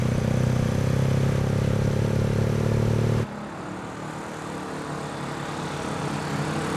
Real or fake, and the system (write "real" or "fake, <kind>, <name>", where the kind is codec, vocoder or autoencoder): real